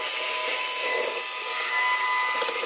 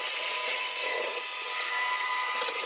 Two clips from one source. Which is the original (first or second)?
first